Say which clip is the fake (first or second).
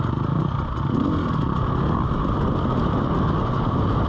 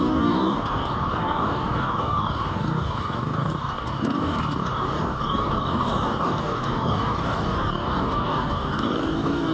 second